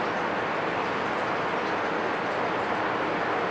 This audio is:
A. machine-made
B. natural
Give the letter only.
B